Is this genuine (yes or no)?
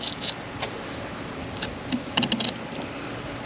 yes